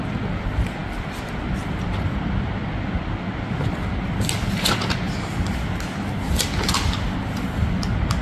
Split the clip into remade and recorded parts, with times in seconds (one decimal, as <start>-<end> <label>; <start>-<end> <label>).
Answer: 0.0-8.2 recorded